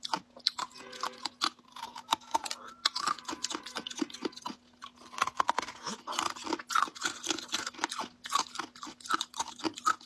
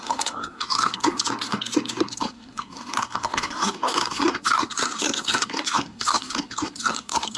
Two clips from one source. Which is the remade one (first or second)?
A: second